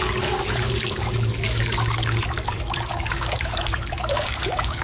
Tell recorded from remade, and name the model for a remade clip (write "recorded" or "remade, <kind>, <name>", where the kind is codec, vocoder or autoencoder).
remade, codec, DAC